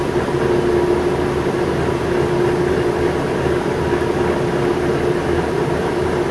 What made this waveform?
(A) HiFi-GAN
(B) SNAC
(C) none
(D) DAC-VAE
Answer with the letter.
C